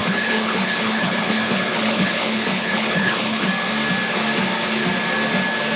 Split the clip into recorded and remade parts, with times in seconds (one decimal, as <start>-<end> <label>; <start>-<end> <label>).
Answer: 0.0-3.5 remade; 3.5-5.8 recorded